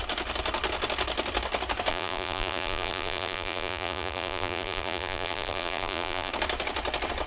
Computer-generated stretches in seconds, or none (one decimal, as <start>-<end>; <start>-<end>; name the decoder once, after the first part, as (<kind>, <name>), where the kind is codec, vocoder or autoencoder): 1.9-6.3 (vocoder, BigVGAN v2)